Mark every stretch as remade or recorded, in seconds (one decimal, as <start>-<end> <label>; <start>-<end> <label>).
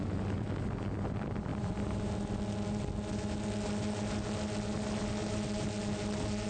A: 0.0-1.5 recorded; 1.5-2.1 remade; 2.1-6.5 recorded